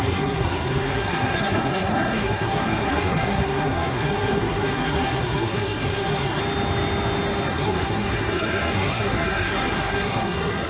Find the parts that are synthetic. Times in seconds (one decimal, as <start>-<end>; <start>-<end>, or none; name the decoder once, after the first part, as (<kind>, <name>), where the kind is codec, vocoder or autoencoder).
0.0-6.4 (codec, SNAC); 7.5-10.7